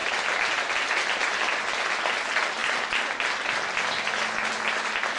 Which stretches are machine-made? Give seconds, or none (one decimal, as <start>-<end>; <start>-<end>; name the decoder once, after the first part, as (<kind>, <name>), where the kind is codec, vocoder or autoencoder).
none